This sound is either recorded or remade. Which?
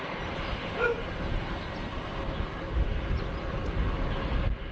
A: recorded